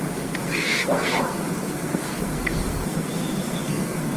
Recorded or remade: remade